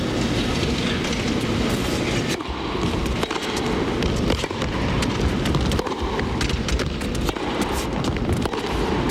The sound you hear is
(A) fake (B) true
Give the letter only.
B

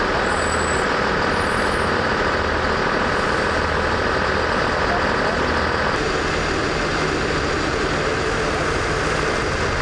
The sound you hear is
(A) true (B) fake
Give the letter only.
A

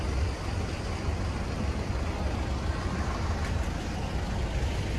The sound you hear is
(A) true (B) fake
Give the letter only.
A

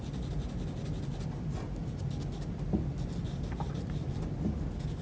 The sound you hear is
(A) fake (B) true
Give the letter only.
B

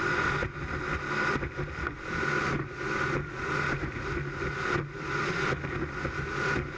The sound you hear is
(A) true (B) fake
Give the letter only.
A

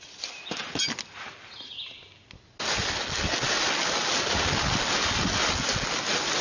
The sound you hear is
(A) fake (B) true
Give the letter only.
B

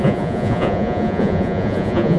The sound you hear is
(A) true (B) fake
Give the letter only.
B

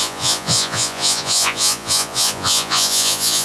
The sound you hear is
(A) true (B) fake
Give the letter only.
B